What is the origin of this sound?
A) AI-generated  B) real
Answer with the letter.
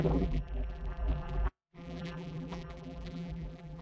A